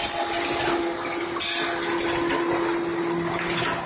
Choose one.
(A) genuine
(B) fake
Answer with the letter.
A